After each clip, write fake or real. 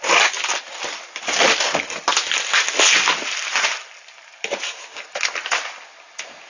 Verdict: real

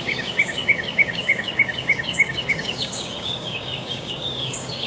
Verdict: fake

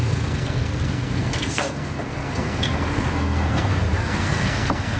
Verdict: fake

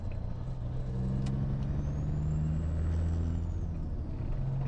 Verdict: real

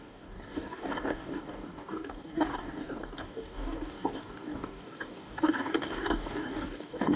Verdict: fake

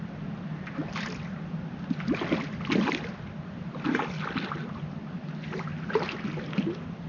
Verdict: real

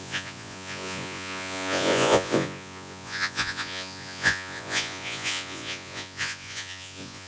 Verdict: fake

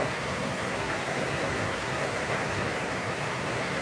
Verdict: fake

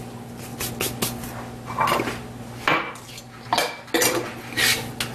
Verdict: real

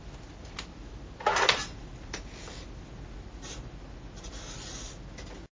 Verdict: real